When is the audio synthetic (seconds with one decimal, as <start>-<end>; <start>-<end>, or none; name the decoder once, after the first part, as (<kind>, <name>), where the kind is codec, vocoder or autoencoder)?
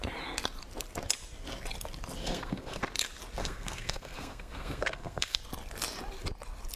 2.2-2.8 (codec, SNAC); 3.4-5.4